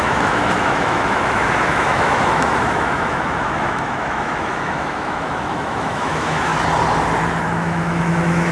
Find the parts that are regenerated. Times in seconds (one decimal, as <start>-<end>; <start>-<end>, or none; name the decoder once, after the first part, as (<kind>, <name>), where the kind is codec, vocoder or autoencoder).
0.0-6.5 (autoencoder, DAC-VAE); 7.4-8.5